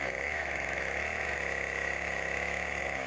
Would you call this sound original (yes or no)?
no